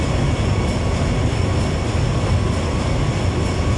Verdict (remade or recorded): recorded